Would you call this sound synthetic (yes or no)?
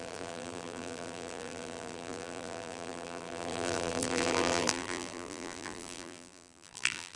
yes